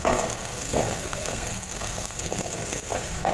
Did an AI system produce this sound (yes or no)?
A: yes